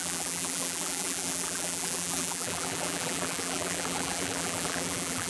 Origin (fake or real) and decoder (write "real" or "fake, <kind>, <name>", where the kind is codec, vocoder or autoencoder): fake, vocoder, BigVGAN v2